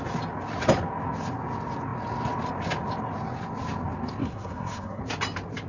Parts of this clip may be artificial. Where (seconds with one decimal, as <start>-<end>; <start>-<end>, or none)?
4.2-5.0